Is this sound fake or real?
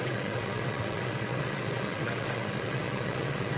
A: fake